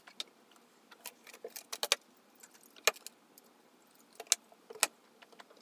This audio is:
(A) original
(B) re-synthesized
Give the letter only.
A